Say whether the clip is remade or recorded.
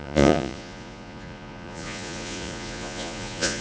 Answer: remade